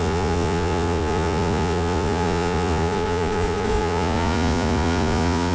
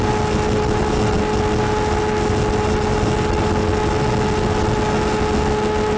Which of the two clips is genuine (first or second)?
second